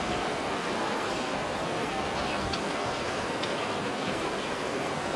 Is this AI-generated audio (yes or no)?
yes